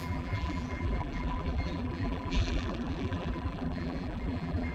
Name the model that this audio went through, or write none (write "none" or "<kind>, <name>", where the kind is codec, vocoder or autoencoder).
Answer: vocoder, BigVGAN v2